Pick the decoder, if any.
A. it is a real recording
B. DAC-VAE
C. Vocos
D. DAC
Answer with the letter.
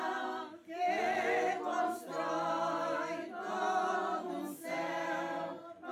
A